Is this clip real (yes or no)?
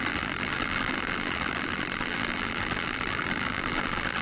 no